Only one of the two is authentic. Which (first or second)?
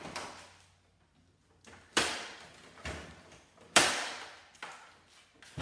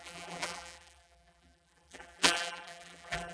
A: first